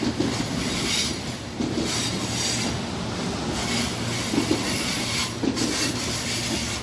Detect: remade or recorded recorded